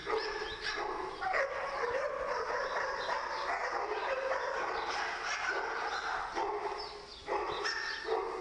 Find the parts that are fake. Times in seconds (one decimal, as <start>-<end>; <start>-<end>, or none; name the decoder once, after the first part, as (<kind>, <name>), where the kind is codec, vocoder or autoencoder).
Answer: 0.0-3.0 (vocoder, BigVGAN v2)